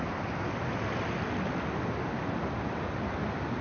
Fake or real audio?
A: real